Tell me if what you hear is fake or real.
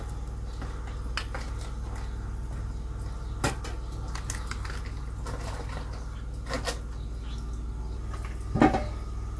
real